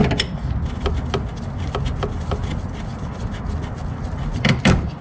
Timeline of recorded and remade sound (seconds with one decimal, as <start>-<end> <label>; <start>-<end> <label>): 0.0-5.0 recorded